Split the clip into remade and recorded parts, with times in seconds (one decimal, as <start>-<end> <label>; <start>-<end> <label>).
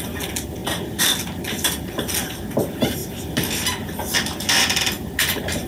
0.0-5.7 recorded